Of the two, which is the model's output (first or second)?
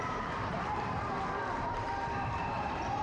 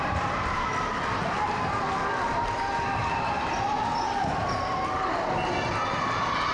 first